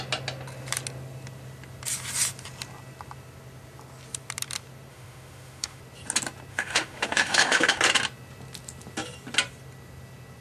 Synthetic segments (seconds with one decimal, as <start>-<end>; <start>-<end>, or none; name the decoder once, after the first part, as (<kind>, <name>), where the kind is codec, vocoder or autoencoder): 4.9-5.8 (autoencoder, DAC-VAE); 6.5-7.8